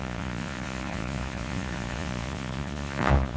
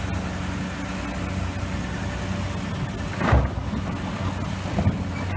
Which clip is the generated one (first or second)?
first